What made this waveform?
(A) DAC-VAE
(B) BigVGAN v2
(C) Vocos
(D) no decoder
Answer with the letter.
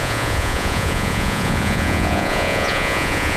C